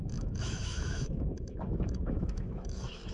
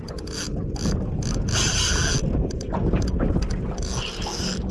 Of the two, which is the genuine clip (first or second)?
second